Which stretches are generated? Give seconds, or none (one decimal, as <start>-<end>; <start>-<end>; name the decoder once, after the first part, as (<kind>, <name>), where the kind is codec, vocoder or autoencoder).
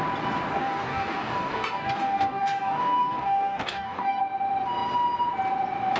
0.6-4.2 (codec, DAC)